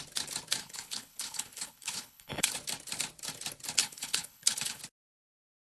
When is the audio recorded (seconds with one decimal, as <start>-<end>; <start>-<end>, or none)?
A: 0.0-0.6; 2.5-3.8; 4.8-5.6